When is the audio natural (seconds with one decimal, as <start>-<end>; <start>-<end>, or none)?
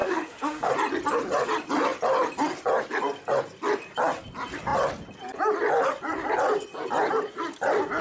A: 0.7-8.0